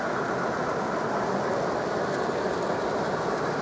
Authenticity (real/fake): real